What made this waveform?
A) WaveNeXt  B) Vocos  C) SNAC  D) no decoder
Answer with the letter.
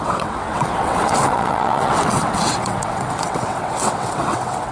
A